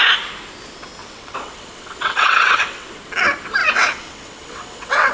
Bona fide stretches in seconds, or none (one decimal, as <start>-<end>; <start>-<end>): 0.0-1.0; 2.9-3.6